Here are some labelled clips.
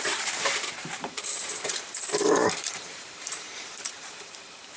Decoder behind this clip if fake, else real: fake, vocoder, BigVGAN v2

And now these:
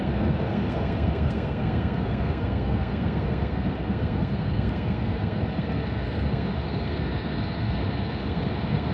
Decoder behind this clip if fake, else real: fake, codec, SNAC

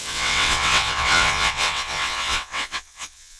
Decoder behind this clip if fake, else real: fake, vocoder, WaveNeXt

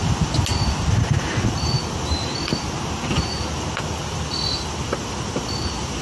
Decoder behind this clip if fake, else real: real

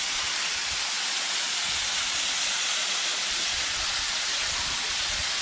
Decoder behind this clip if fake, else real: fake, vocoder, Vocos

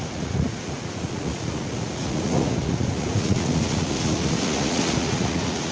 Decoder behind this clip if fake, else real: fake, vocoder, Vocos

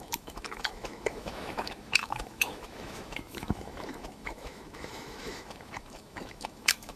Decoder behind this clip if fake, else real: fake, autoencoder, DAC-VAE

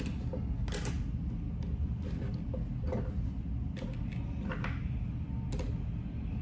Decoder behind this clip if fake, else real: real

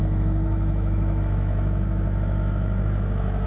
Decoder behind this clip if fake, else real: fake, autoencoder, DAC-VAE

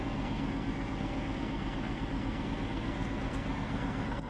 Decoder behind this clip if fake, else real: fake, codec, SNAC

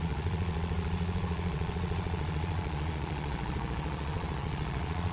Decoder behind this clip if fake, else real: fake, vocoder, Vocos